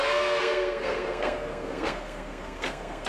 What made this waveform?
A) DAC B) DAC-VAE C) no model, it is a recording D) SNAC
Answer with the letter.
D